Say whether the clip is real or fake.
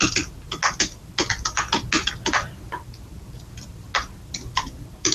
real